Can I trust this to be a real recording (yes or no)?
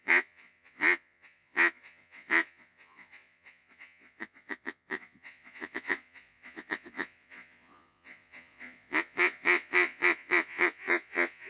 no